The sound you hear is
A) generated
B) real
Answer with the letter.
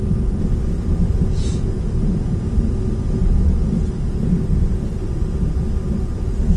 B